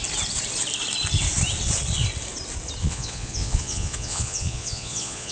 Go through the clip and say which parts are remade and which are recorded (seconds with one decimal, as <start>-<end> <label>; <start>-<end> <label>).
0.0-2.8 recorded; 2.8-5.3 remade